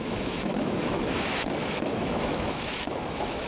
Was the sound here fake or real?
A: fake